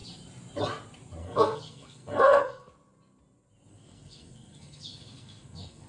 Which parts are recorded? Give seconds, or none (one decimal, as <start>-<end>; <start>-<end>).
0.0-1.2; 2.7-3.7